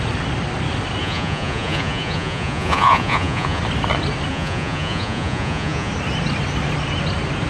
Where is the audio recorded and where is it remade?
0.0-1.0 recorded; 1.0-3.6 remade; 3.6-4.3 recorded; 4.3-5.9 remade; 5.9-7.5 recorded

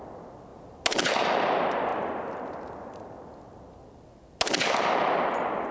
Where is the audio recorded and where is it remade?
0.0-5.7 recorded

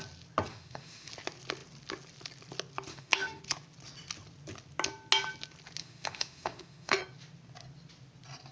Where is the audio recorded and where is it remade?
0.0-0.5 recorded; 0.5-1.1 remade; 1.1-2.9 recorded; 2.9-3.4 remade; 3.4-5.8 recorded; 5.8-7.0 remade; 7.0-8.5 recorded